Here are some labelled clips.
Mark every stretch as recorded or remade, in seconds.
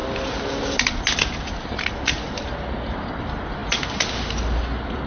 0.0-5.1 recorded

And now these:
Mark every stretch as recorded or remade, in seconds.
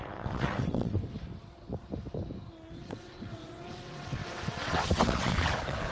0.0-1.0 remade; 1.0-2.8 recorded; 2.8-5.9 remade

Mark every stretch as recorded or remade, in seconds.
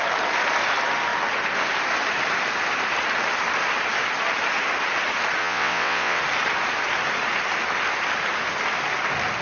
0.0-5.4 recorded; 5.4-6.2 remade; 6.2-9.4 recorded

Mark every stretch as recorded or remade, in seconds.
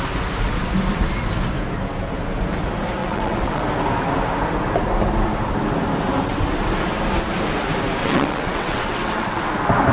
0.0-3.0 recorded; 3.0-3.6 remade; 3.6-8.0 recorded; 8.0-9.4 remade; 9.4-9.9 recorded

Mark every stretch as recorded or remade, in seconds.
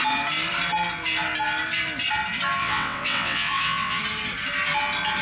0.0-2.6 recorded; 2.6-4.0 remade; 4.0-5.2 recorded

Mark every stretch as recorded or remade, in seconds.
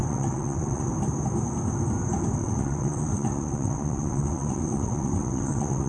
0.0-0.9 remade; 0.9-2.4 recorded; 2.4-5.9 remade